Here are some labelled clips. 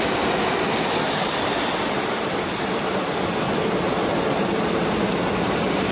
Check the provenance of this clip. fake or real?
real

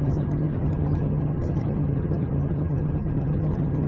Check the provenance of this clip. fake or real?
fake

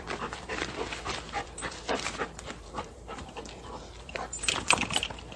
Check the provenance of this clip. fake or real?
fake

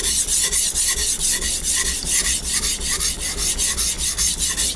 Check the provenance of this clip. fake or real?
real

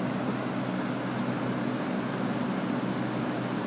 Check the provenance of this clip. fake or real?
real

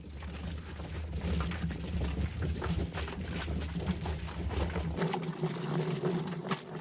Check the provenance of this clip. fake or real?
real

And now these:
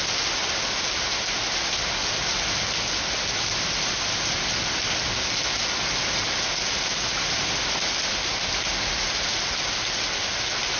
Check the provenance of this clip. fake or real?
real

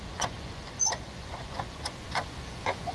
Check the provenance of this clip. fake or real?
fake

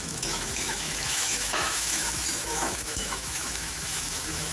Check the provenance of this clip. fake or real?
fake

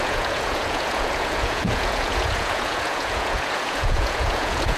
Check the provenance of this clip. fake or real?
fake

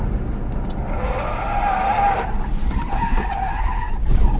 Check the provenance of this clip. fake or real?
real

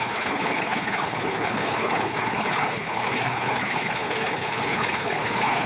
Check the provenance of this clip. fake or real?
fake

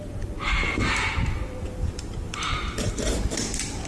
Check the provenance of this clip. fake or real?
fake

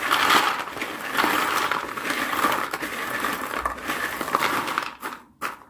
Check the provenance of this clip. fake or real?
real